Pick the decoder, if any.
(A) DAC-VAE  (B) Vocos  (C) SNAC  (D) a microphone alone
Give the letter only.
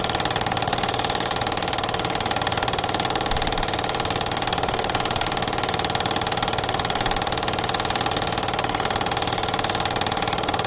D